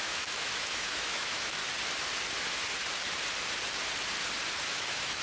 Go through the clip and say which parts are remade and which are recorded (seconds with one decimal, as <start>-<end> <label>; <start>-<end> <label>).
0.0-1.6 remade; 1.6-4.7 recorded; 4.7-5.2 remade